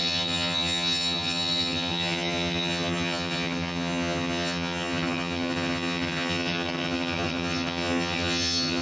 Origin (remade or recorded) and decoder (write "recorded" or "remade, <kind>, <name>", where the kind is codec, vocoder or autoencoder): remade, vocoder, HiFi-GAN